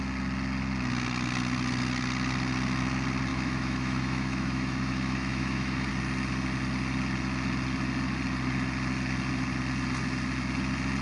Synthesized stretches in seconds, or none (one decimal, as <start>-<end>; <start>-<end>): 3.3-5.9